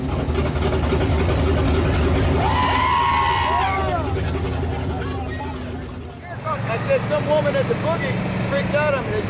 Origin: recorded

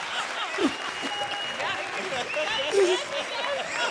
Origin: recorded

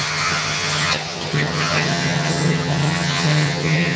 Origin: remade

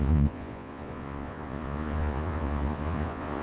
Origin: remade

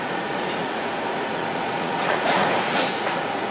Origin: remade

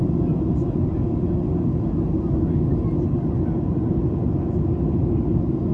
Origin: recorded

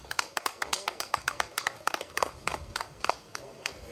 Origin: remade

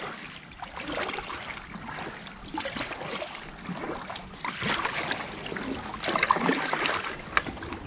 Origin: recorded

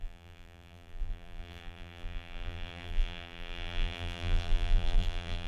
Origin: remade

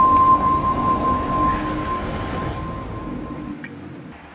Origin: recorded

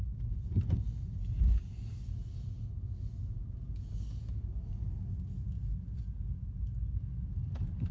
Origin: recorded